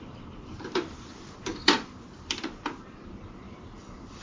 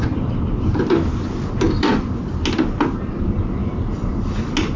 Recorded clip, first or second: second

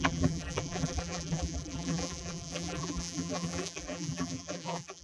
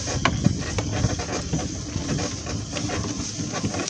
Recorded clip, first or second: second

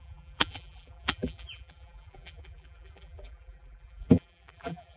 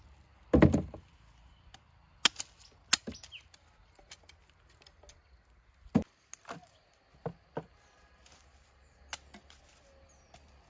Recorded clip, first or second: second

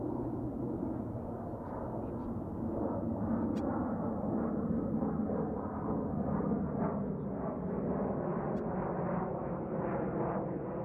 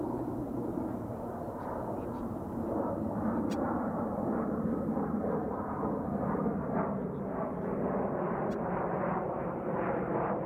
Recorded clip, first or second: first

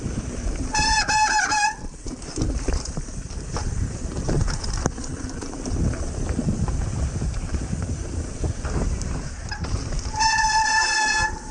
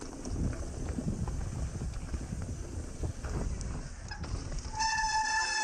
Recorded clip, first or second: second